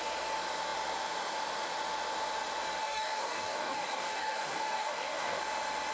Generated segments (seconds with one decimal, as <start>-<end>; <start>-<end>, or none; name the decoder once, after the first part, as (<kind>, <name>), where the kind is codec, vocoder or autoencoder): 2.8-5.4 (codec, DAC)